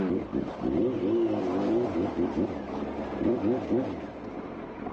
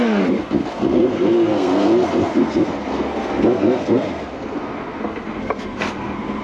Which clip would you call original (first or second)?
first